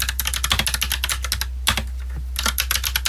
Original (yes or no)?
yes